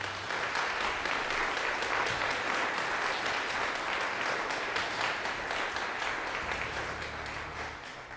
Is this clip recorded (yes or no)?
yes